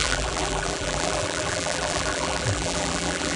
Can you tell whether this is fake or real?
fake